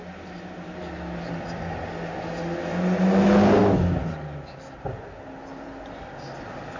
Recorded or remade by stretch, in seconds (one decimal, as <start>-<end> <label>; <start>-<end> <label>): 0.0-6.8 recorded